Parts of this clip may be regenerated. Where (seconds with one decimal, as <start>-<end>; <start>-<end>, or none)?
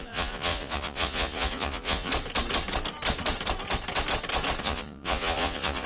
0.0-2.1; 4.6-5.9